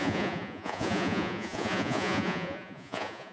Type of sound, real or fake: fake